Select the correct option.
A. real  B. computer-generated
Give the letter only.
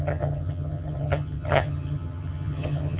B